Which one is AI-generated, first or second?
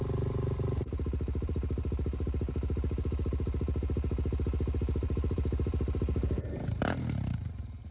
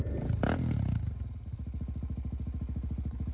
first